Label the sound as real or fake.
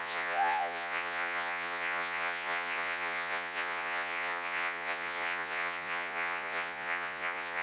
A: fake